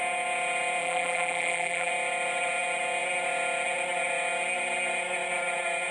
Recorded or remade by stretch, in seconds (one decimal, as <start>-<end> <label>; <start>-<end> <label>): 0.0-0.8 recorded; 0.8-1.9 remade; 1.9-5.9 recorded